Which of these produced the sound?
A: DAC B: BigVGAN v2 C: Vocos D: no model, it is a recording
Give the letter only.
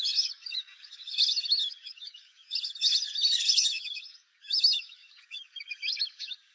A